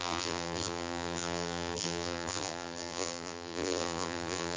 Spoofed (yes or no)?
yes